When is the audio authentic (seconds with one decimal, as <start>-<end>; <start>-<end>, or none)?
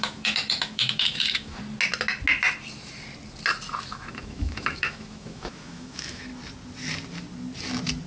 1.6-3.9; 6.3-8.1